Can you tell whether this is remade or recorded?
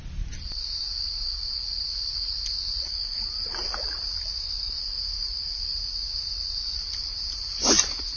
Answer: recorded